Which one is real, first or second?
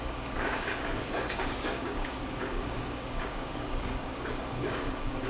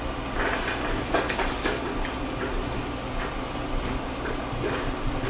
second